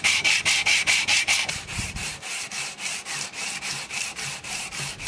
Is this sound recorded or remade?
remade